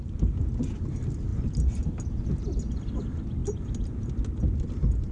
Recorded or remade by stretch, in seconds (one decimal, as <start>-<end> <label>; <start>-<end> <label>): 0.0-5.1 recorded